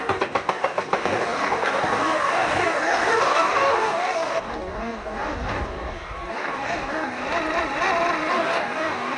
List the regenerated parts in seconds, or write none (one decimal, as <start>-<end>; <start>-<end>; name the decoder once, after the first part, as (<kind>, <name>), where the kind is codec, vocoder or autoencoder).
0.0-7.2 (codec, DAC); 8.3-9.2